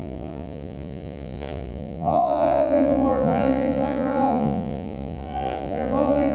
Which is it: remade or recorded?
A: remade